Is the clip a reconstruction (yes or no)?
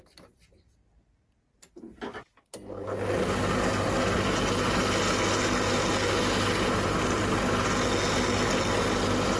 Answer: no